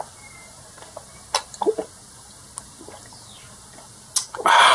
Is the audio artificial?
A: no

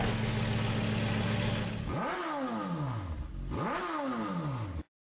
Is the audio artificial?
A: no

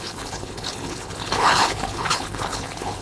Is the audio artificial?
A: yes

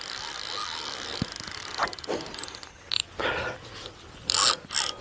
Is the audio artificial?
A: no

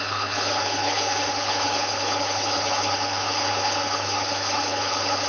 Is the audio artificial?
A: yes